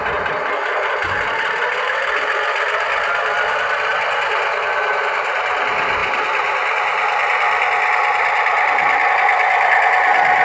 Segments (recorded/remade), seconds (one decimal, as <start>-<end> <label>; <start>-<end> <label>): 0.0-3.9 remade; 3.9-4.9 recorded; 4.9-10.4 remade